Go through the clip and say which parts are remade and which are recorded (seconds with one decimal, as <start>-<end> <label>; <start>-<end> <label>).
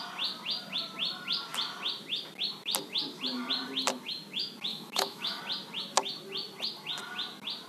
0.0-4.7 recorded; 4.7-5.4 remade; 5.4-7.7 recorded